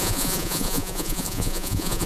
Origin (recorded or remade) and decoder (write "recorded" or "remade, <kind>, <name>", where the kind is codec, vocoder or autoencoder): remade, vocoder, Vocos